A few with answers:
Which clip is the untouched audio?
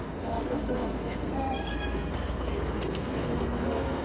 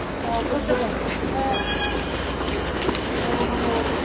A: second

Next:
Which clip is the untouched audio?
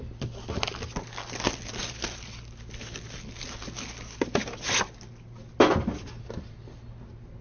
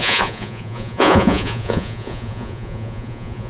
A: first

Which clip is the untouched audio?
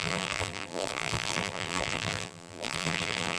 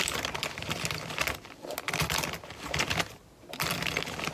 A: second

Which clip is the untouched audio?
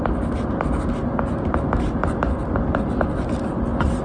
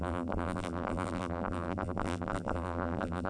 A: first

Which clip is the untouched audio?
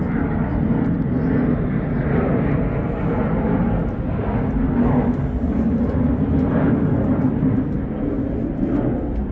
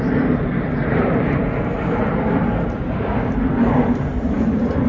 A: first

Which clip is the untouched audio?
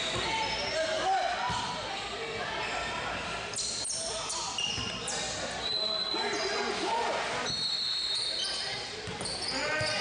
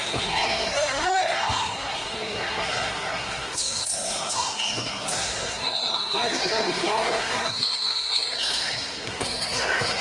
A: first